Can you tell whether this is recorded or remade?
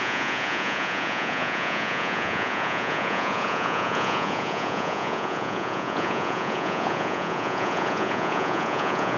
remade